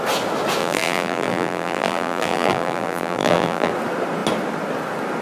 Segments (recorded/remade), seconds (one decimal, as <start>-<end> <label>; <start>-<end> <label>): 0.0-0.6 recorded; 0.6-3.7 remade; 3.7-5.2 recorded